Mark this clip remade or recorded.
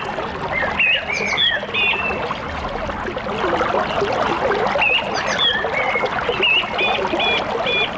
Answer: recorded